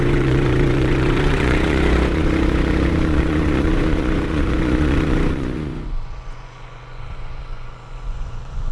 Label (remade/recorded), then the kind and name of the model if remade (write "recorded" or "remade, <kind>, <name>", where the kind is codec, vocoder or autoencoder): remade, vocoder, Vocos